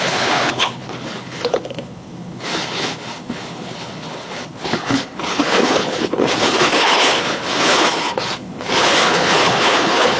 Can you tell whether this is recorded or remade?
remade